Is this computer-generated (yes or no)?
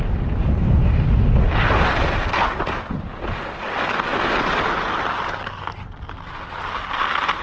no